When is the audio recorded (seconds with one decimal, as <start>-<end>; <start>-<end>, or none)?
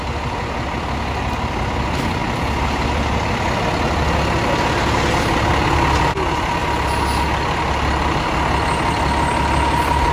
0.0-10.1